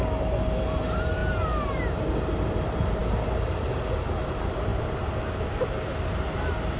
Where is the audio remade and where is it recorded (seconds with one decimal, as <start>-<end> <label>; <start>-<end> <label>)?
0.0-6.8 recorded